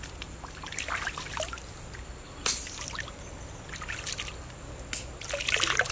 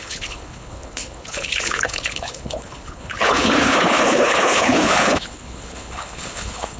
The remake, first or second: second